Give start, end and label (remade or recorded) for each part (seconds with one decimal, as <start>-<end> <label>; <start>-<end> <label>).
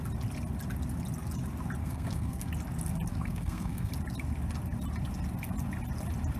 0.0-1.8 recorded; 1.8-2.5 remade; 2.5-3.1 recorded; 3.1-3.9 remade; 3.9-6.4 recorded